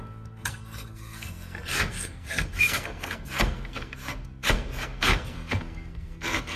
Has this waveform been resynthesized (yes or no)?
yes